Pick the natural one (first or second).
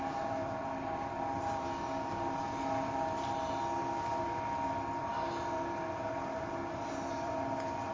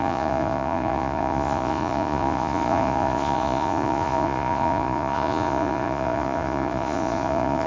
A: first